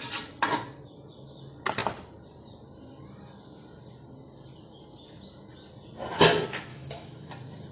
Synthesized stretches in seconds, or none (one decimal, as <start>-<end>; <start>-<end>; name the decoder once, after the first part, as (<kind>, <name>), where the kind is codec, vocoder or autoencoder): 6.7-7.3 (autoencoder, DAC-VAE)